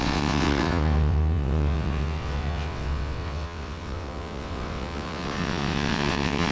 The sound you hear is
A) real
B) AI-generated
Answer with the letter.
B